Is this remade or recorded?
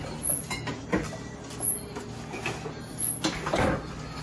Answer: recorded